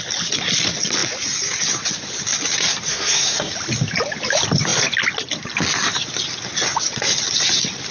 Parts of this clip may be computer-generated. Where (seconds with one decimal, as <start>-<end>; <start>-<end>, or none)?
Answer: 2.9-3.5